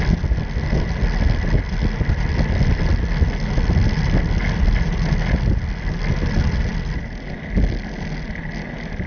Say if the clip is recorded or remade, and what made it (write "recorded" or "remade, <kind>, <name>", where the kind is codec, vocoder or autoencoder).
recorded